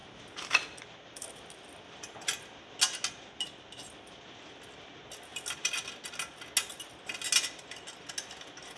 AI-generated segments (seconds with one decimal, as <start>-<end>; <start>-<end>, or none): none